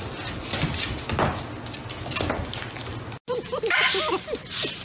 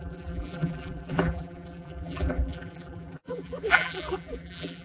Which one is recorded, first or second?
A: first